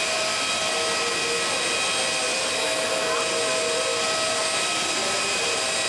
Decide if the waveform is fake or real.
real